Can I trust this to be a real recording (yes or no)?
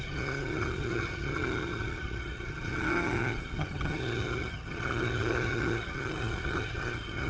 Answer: no